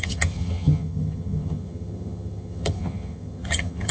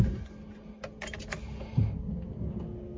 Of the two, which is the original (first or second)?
second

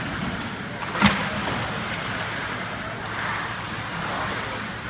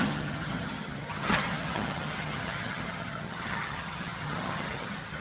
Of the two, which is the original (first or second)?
first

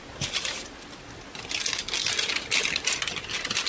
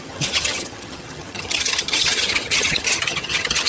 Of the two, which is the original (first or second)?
first